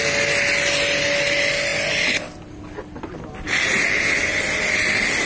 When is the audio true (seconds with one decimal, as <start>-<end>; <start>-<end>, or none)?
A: 0.0-5.3